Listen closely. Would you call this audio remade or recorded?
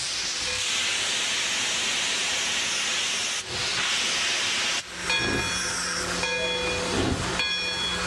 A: recorded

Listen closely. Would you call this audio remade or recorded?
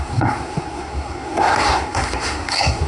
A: remade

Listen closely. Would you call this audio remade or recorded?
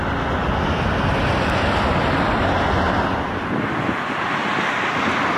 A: recorded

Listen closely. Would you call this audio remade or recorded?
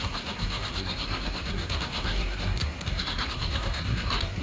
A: remade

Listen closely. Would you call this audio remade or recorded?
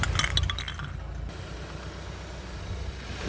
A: recorded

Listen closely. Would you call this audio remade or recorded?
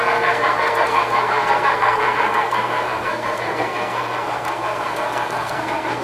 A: remade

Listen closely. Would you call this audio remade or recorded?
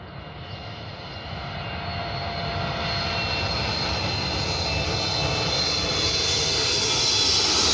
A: recorded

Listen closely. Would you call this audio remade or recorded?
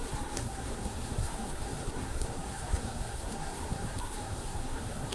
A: remade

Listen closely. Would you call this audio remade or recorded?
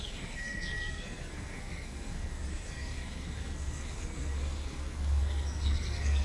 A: remade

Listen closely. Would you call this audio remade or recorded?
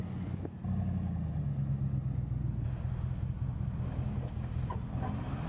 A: recorded